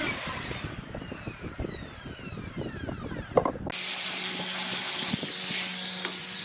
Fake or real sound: real